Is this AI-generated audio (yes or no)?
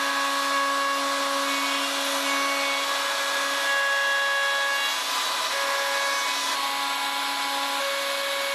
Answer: no